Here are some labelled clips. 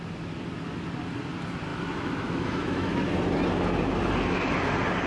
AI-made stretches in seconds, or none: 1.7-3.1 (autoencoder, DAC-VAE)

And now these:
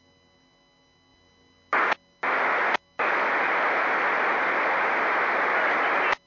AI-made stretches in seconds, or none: none

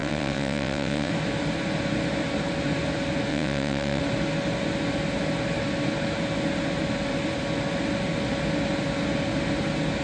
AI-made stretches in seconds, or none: 0.0-1.1 (vocoder, WaveNeXt); 3.3-4.0

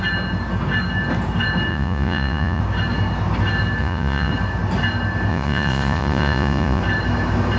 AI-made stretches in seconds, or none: 1.7-2.6 (vocoder, Vocos); 3.8-4.3; 5.3-6.8

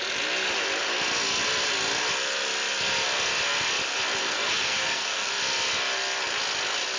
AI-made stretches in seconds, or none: 4.2-5.3 (codec, SNAC)

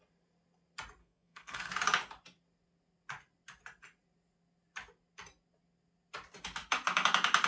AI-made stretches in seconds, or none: 1.0-1.7 (codec, SNAC)